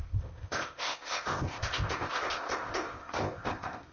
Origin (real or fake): fake